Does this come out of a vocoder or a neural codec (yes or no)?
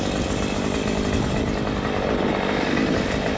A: no